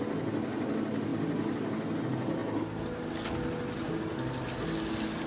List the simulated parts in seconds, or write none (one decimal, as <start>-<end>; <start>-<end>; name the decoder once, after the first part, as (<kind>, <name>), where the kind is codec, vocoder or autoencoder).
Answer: none